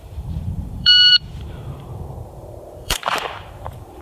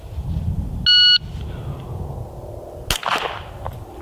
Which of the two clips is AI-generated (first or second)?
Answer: first